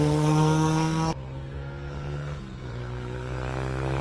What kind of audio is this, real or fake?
fake